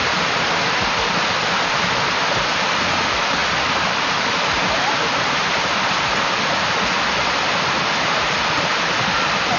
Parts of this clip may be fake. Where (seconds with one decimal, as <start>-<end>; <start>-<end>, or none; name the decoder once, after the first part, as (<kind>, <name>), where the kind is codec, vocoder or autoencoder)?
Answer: none